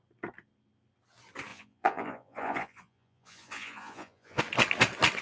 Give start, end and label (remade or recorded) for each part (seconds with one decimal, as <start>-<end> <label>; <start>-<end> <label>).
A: 0.0-1.5 recorded; 1.5-4.4 remade; 4.4-5.2 recorded